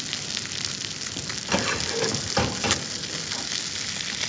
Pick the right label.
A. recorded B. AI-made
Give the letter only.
A